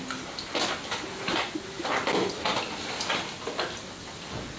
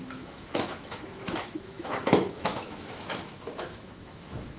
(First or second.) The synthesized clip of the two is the second